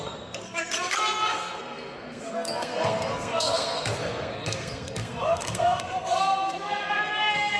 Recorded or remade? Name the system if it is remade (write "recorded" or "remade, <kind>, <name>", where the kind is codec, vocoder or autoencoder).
remade, codec, SNAC